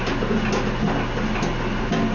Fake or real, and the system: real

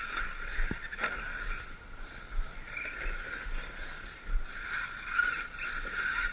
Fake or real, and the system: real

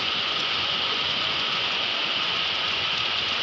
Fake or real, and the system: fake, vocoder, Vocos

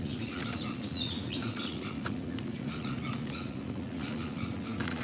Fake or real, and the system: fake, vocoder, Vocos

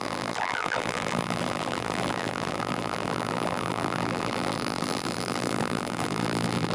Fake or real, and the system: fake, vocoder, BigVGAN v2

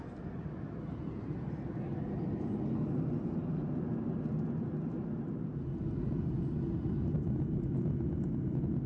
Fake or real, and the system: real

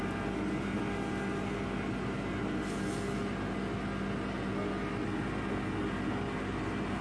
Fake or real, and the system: real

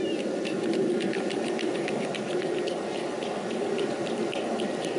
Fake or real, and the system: fake, vocoder, BigVGAN v2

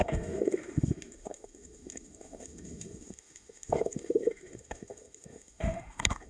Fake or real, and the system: fake, autoencoder, DAC-VAE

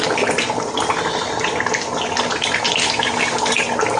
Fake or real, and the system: real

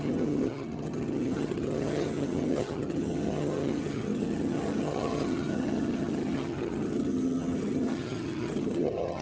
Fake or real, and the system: fake, vocoder, HiFi-GAN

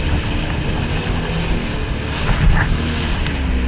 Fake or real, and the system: real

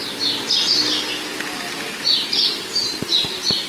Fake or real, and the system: real